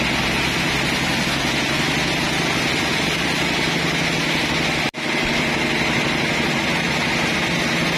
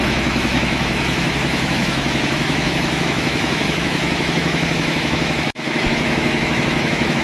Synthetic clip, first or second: second